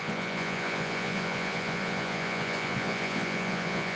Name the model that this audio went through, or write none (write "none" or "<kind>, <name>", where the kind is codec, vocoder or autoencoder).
vocoder, Vocos